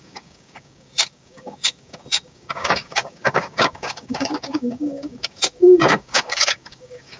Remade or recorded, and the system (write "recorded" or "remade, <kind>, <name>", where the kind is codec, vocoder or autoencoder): remade, codec, DAC